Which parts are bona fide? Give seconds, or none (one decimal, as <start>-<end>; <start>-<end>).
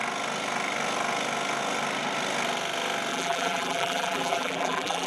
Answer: 0.0-3.1